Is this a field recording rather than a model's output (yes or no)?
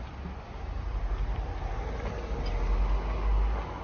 yes